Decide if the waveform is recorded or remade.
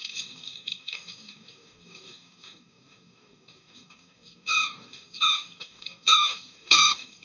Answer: remade